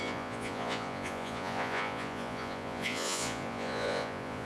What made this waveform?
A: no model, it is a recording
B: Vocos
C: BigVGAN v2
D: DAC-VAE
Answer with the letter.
B